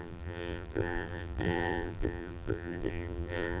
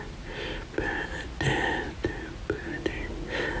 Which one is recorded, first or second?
second